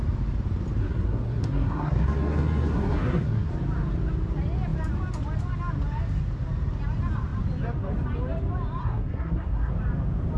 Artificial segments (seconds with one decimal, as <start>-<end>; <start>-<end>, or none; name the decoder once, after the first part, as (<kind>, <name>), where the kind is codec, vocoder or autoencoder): 0.8-3.5 (codec, SNAC); 8.8-9.7